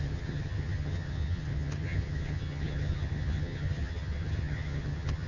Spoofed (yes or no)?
yes